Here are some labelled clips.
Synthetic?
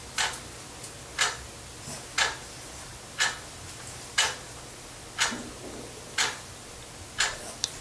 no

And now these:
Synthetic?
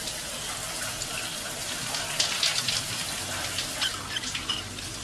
no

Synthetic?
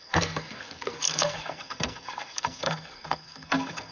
yes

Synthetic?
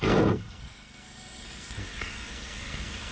yes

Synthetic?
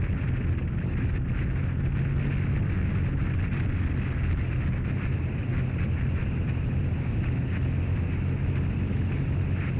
no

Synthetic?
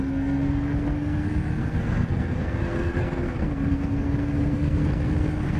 yes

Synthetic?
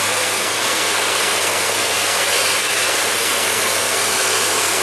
yes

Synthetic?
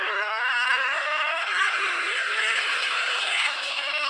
yes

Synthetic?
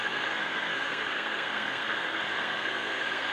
yes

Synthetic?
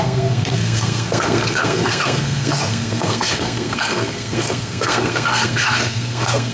yes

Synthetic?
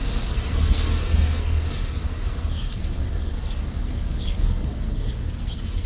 yes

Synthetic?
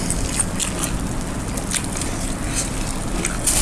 no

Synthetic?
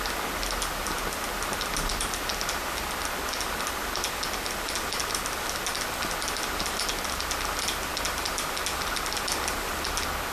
no